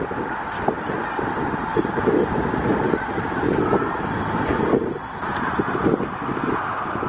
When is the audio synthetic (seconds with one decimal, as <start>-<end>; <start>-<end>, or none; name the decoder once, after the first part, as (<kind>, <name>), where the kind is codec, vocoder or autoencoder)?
1.7-4.6 (vocoder, BigVGAN v2); 5.0-6.2